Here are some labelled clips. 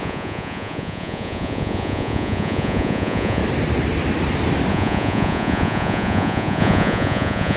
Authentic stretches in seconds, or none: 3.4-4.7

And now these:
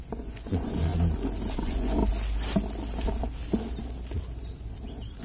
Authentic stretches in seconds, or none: 0.9-1.5; 2.0-5.2

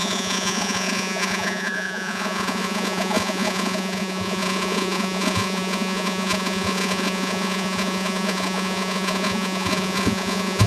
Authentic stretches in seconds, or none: none

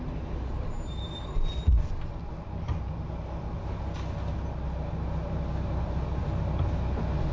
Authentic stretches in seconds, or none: 0.0-7.3